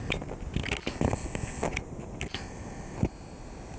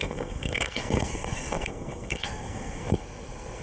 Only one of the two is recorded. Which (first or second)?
first